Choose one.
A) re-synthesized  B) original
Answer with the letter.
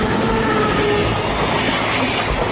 B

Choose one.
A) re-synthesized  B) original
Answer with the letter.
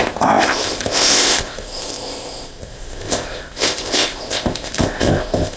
A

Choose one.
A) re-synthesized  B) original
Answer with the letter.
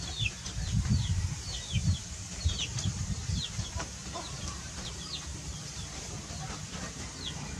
A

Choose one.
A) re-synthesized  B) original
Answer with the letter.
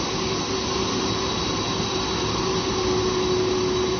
B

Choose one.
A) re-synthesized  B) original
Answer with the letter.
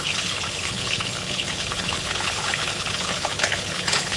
A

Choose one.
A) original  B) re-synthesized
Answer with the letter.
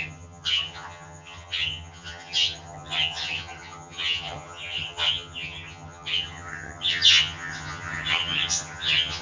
B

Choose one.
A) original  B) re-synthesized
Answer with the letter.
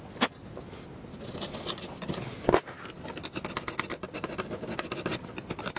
A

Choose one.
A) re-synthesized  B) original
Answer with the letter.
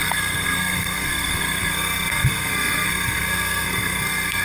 A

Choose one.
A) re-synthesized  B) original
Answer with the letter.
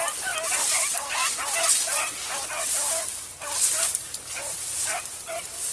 B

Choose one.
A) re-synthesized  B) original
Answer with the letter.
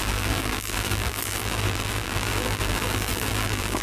A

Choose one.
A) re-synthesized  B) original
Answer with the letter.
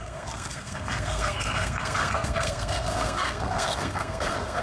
A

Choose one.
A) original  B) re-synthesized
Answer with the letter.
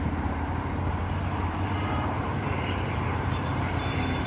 B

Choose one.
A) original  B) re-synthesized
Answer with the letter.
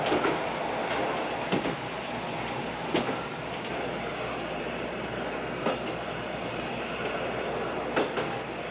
A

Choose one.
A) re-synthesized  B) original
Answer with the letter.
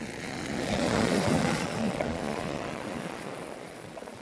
A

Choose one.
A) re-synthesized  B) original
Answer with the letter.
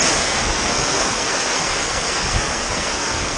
A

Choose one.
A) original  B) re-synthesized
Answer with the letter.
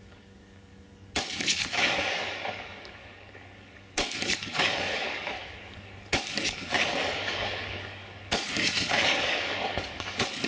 B